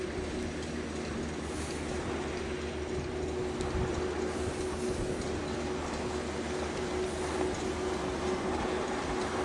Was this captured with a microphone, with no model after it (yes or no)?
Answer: yes